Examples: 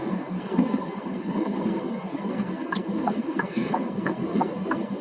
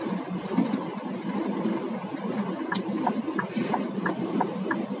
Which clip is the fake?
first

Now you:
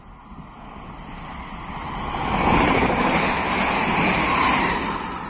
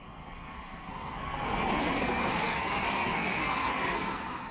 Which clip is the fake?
second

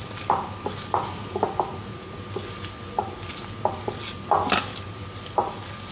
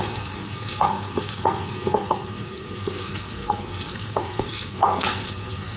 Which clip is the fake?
second